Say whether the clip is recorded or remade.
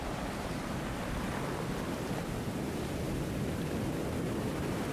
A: recorded